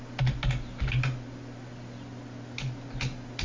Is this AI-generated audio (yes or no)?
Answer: no